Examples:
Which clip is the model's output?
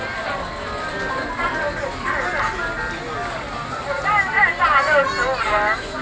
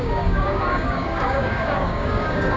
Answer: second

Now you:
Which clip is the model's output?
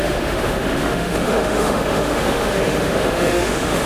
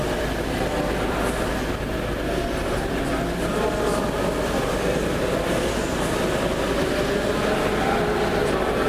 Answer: first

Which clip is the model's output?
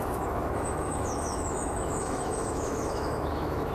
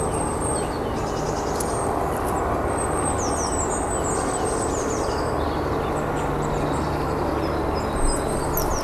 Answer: first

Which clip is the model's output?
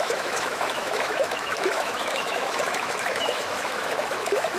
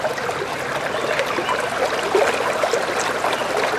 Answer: first